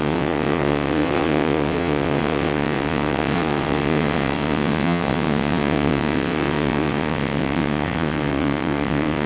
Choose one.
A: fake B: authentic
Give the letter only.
A